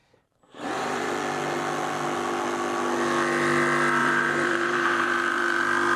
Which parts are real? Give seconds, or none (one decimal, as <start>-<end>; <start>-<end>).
1.1-4.0; 5.6-6.0